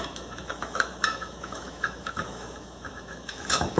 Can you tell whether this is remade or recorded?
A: remade